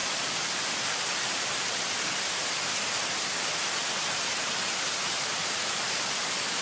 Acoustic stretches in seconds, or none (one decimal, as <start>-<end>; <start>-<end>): 2.2-6.6